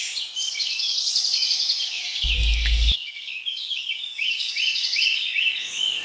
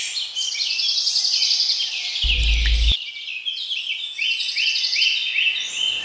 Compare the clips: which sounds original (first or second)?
second